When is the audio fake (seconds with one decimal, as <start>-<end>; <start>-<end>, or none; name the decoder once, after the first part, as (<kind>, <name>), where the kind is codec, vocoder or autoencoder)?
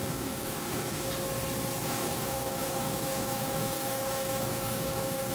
0.0-1.1 (codec, DAC); 1.8-5.3